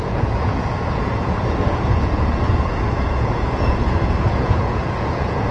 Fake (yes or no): yes